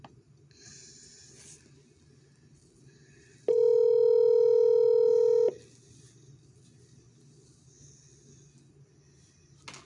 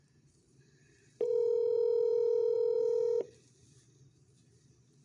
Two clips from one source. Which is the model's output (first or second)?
second